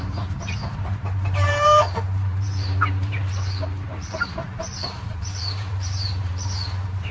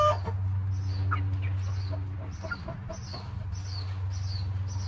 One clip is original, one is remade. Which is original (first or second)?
second